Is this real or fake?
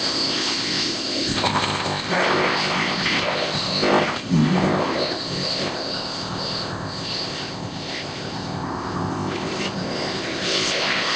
fake